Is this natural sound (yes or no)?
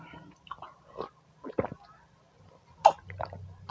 yes